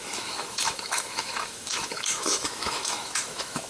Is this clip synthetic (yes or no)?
yes